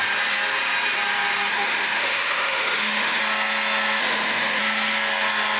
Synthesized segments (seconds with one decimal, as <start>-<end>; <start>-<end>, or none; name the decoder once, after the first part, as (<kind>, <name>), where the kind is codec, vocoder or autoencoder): 1.5-3.2 (autoencoder, DAC-VAE); 4.0-4.6